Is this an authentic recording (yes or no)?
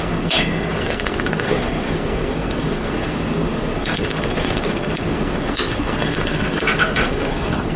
no